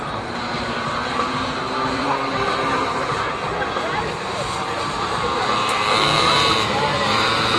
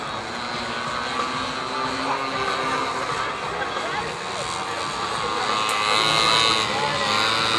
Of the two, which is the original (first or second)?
second